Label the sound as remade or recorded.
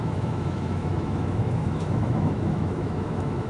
remade